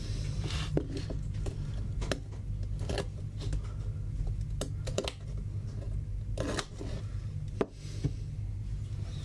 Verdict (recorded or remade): recorded